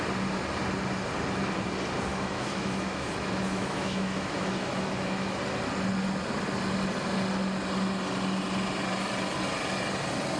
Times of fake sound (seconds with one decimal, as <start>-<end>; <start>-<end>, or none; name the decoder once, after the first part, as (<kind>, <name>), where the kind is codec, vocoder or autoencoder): 2.1-5.4 (autoencoder, DAC-VAE)